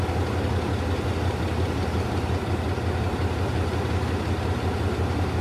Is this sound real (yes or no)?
yes